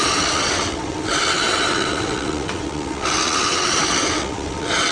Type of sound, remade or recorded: remade